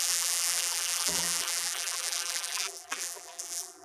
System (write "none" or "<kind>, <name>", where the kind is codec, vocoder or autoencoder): vocoder, BigVGAN v2